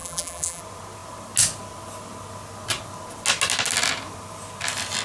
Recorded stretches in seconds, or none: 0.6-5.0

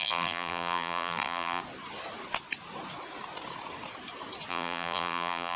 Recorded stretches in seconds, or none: 1.6-4.5